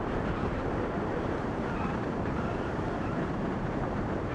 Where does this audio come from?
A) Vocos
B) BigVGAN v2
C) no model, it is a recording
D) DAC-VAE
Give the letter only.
B